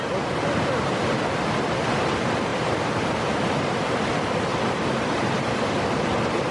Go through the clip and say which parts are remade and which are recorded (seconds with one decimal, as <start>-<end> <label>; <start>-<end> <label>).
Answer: 0.0-2.5 recorded; 2.5-3.7 remade; 3.7-4.5 recorded; 4.5-6.5 remade